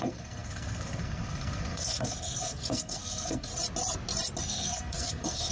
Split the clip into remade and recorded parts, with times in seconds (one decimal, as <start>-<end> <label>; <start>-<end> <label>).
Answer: 0.0-3.5 remade; 3.5-4.4 recorded; 4.4-5.5 remade

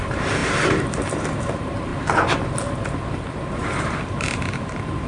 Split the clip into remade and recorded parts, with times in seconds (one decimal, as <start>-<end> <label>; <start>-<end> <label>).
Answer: 0.0-1.9 remade; 1.9-3.5 recorded; 3.5-5.1 remade